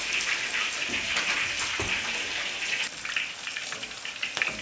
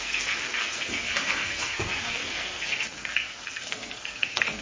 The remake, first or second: second